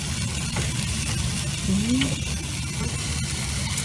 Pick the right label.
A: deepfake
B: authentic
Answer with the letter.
B